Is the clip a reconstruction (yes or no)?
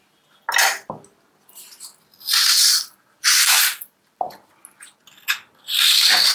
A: no